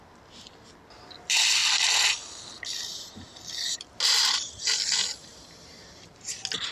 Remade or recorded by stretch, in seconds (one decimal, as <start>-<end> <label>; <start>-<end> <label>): 0.0-6.7 recorded